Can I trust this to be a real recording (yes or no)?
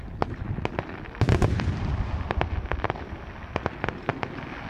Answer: yes